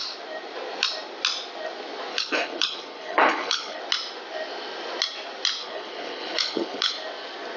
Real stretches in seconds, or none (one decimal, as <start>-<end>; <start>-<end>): 0.0-2.1; 3.8-5.6; 6.9-7.6